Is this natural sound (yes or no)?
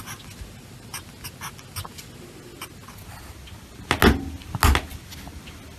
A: yes